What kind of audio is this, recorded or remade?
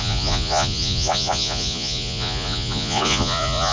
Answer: remade